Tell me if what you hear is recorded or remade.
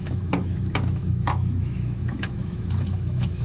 remade